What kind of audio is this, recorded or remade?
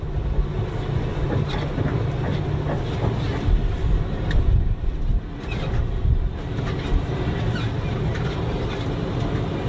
recorded